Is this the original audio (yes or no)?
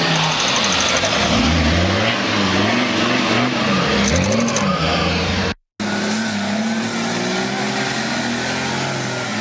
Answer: yes